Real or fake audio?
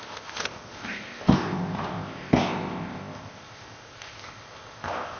fake